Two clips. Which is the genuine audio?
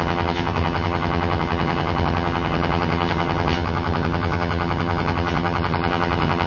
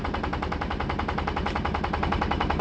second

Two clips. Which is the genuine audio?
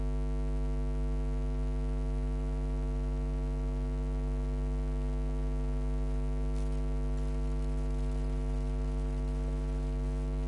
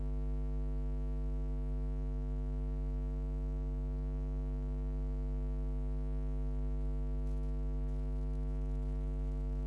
first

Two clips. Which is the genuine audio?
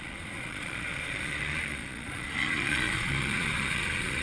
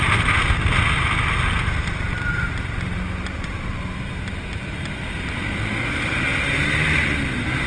second